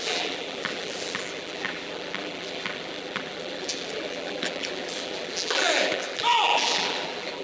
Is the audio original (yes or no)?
no